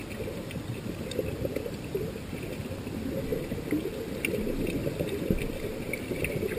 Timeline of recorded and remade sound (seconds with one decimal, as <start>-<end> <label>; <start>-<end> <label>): 0.0-6.6 recorded